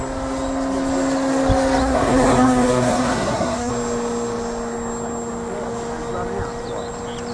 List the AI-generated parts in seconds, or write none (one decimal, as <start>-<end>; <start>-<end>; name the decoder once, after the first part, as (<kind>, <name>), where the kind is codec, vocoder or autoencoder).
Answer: 1.8-3.7 (codec, SNAC)